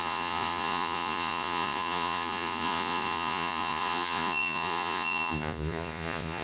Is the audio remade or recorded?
remade